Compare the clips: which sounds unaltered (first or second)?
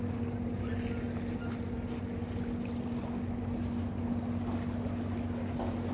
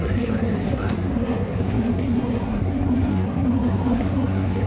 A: first